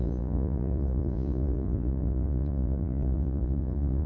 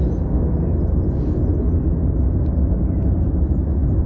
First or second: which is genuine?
second